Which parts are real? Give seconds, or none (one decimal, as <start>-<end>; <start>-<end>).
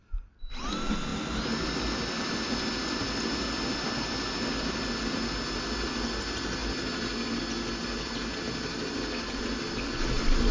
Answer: 0.0-10.5